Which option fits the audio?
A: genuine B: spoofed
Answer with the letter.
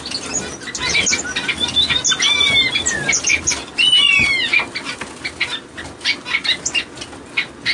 A